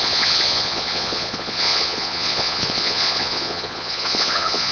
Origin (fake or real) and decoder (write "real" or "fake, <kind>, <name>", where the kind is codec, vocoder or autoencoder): fake, vocoder, Vocos